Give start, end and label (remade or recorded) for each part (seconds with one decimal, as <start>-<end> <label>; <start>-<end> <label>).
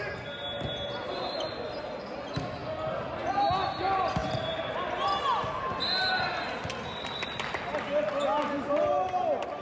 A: 0.0-9.6 recorded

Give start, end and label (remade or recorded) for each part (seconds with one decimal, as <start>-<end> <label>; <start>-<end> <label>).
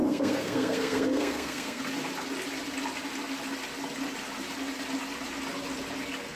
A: 0.0-1.8 remade; 1.8-6.4 recorded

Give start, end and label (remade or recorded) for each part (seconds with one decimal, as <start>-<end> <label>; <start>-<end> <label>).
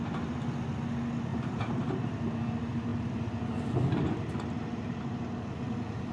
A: 0.0-1.3 recorded; 1.3-1.9 remade; 1.9-6.1 recorded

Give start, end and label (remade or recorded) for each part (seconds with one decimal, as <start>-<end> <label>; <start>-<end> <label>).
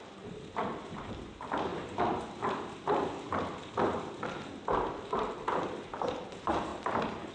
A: 0.0-6.7 remade; 6.7-7.3 recorded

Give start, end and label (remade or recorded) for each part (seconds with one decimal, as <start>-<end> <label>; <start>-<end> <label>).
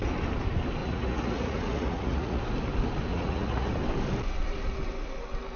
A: 0.0-0.8 recorded; 0.8-2.4 remade; 2.4-3.1 recorded; 3.1-3.7 remade; 3.7-5.6 recorded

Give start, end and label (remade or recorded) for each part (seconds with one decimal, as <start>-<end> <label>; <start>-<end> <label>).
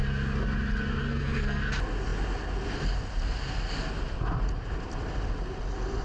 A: 0.0-1.0 recorded; 1.0-1.6 remade; 1.6-6.0 recorded